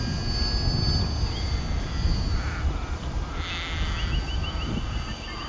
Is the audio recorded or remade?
recorded